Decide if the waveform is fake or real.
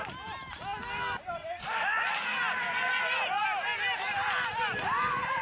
real